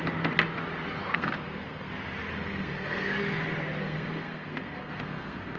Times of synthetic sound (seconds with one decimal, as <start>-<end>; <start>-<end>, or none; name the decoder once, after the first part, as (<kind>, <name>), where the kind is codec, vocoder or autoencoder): 1.0-1.9 (codec, SNAC); 2.3-3.2; 3.8-5.6

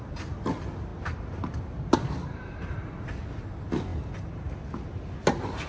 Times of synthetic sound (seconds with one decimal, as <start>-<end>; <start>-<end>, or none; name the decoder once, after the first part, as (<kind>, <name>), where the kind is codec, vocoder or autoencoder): none

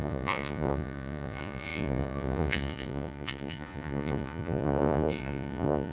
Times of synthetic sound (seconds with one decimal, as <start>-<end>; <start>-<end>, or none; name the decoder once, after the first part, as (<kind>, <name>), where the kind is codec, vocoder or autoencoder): 0.0-5.9 (vocoder, Vocos)

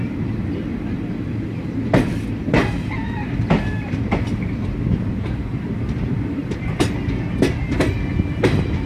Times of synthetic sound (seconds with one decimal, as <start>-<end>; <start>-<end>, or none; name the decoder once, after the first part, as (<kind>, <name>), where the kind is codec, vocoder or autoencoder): 4.9-6.9 (vocoder, BigVGAN v2)